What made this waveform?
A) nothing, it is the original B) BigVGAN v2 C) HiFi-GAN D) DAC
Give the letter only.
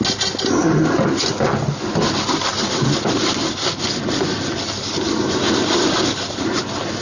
A